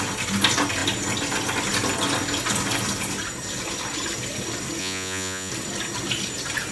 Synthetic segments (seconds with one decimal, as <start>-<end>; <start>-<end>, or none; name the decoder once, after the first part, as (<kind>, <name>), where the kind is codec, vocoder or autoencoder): 4.8-5.5 (vocoder, Vocos)